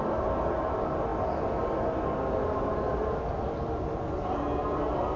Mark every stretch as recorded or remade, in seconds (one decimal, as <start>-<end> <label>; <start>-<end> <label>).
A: 0.0-5.2 recorded